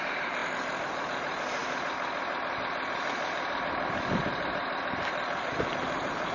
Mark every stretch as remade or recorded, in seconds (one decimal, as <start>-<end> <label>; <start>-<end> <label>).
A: 0.0-1.6 remade; 1.6-5.4 recorded; 5.4-6.3 remade